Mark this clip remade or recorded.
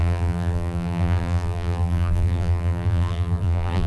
remade